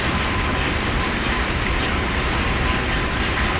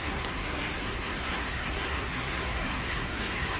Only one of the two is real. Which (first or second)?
first